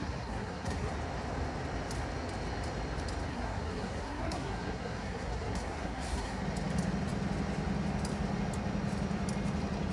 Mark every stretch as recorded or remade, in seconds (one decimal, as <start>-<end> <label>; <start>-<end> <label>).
0.0-0.9 remade; 0.9-3.3 recorded; 3.3-6.4 remade; 6.4-9.9 recorded